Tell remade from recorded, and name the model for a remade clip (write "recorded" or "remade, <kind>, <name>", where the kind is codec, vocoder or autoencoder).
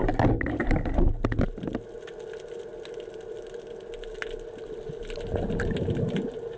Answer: recorded